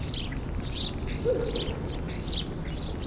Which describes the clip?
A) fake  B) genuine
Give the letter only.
B